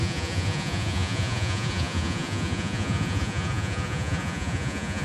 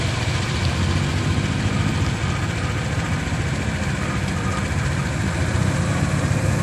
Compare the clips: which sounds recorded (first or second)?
second